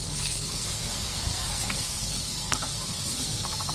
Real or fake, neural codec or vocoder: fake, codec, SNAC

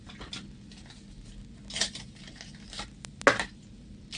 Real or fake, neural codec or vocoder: real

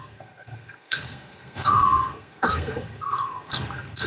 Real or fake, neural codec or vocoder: fake, codec, SNAC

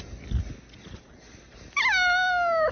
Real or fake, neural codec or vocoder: real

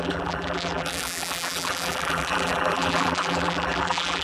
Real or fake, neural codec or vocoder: fake, vocoder, BigVGAN v2